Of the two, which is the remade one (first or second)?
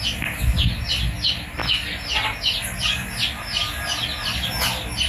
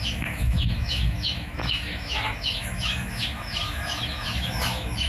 second